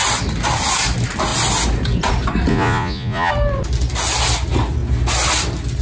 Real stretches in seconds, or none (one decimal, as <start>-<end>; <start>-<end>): 0.0-2.5; 3.3-5.8